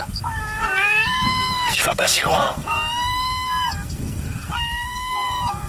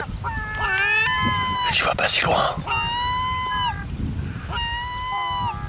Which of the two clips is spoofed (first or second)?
first